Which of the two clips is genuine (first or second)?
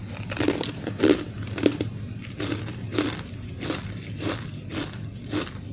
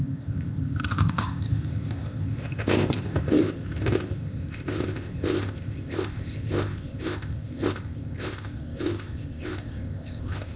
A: first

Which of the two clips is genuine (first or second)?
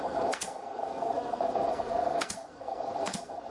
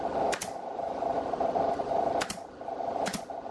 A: second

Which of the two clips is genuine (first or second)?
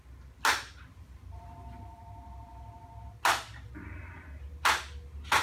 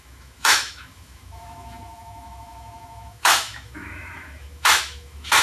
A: first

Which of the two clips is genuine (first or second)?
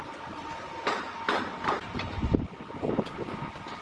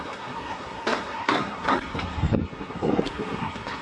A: first